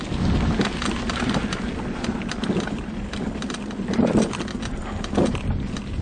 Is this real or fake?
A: real